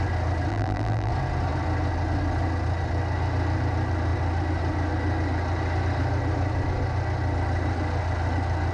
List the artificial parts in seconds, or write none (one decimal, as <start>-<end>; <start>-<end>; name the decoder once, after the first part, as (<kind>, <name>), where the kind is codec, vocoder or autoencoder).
0.5-1.1 (vocoder, BigVGAN v2)